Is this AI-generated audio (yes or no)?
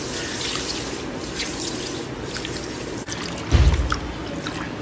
no